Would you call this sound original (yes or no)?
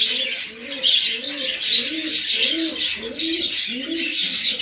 yes